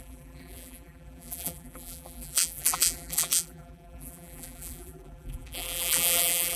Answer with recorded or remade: remade